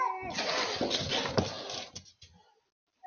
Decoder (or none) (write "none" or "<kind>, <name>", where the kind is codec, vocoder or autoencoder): none